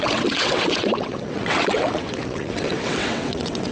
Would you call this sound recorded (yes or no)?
no